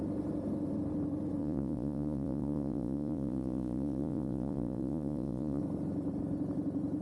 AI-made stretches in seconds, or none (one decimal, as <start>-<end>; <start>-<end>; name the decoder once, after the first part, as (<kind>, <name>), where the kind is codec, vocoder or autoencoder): 1.4-5.6 (vocoder, Vocos)